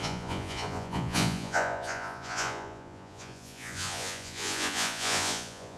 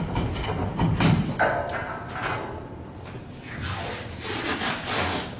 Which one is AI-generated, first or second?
first